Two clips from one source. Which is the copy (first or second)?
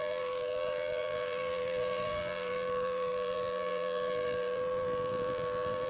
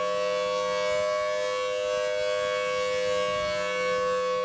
first